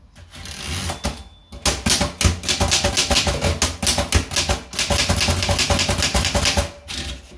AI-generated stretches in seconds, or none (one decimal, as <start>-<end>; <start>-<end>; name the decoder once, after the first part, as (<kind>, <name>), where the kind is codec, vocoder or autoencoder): none